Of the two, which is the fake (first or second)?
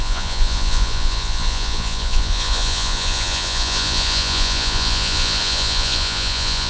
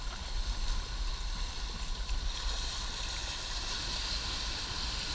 first